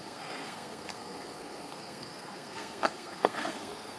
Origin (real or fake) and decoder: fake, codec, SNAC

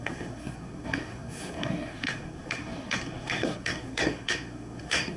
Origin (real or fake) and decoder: fake, codec, SNAC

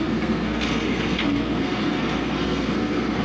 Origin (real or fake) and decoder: fake, codec, SNAC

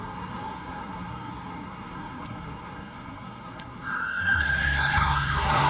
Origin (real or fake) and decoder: fake, codec, SNAC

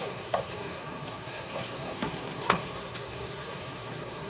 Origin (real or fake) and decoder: fake, codec, SNAC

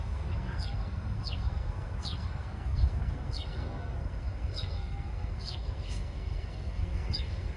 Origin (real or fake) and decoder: fake, codec, SNAC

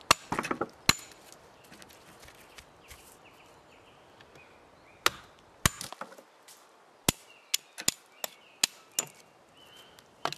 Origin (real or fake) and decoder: real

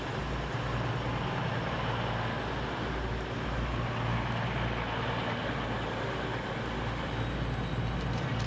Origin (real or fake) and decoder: real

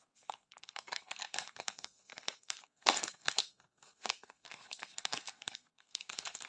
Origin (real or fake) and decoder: fake, codec, SNAC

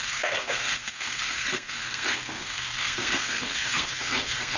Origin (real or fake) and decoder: fake, codec, SNAC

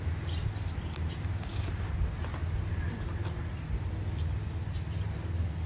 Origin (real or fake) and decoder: real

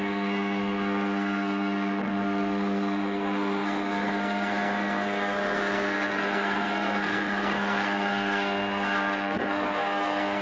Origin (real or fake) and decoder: fake, codec, SNAC